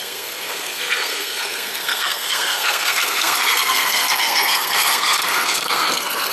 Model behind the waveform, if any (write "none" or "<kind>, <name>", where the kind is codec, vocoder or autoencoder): codec, SNAC